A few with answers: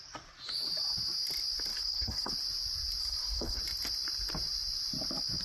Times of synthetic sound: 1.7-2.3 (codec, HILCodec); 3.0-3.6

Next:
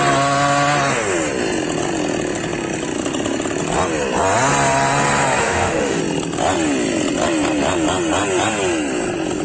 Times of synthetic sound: 5.4-6.0 (autoencoder, DAC-VAE)

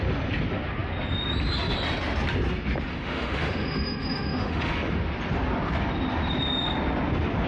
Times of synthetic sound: 2.9-4.7 (autoencoder, DAC-VAE)

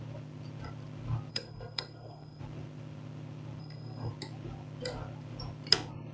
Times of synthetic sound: 1.3-2.4 (codec, SNAC); 3.6-4.1

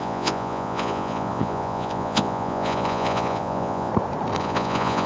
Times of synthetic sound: 0.0-3.9 (vocoder, Vocos); 4.4-5.1

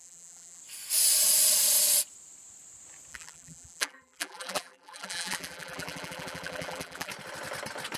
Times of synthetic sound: 0.0-0.6 (vocoder, BigVGAN v2); 3.1-7.1